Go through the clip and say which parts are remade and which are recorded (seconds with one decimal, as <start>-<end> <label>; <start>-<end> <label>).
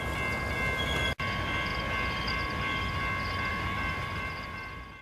0.0-3.5 recorded; 3.5-5.0 remade